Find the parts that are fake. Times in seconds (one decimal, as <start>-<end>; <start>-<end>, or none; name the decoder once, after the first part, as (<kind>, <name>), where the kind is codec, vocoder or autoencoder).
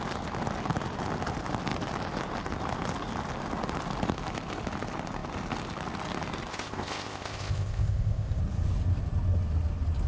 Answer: 6.5-8.4 (codec, ZipCodec)